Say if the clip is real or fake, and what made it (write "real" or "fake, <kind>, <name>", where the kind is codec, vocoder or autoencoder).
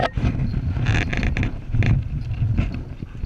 real